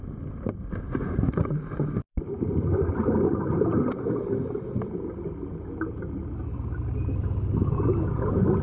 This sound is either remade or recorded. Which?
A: recorded